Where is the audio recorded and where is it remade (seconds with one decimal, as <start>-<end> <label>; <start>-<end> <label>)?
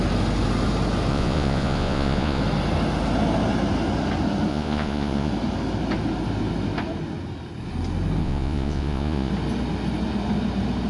0.0-1.1 recorded; 1.1-2.4 remade; 2.4-4.5 recorded; 4.5-5.3 remade; 5.3-8.2 recorded; 8.2-9.3 remade; 9.3-10.9 recorded